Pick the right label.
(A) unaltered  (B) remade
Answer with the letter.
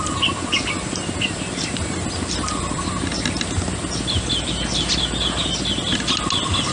A